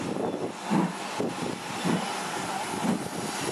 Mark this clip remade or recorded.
recorded